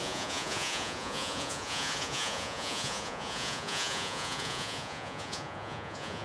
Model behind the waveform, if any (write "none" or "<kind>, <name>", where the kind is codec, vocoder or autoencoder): vocoder, Vocos